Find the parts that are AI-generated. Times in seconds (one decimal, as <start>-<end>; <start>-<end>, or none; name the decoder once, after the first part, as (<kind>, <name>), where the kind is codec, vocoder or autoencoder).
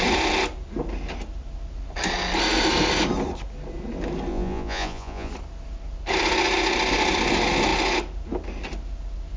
4.3-5.3 (vocoder, Vocos)